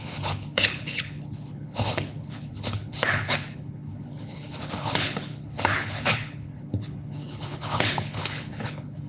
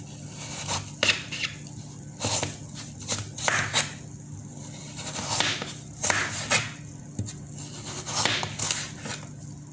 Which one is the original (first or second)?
second